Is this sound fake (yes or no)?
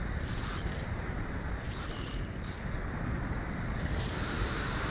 yes